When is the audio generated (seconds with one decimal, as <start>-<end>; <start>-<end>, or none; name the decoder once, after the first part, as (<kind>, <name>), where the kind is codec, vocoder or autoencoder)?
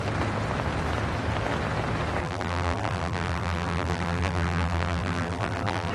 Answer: 2.2-5.9 (vocoder, BigVGAN v2)